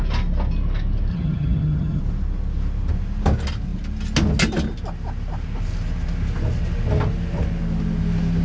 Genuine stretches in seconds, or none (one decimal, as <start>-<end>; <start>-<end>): 0.0-1.1; 2.0-8.4